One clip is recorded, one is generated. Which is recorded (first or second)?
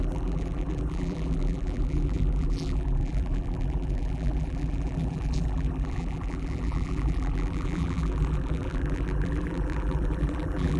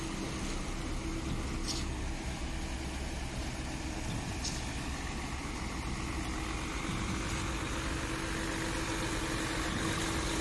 second